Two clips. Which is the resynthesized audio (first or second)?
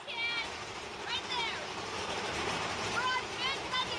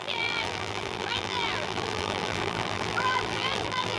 second